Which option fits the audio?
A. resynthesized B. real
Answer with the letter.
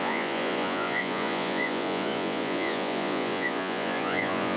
A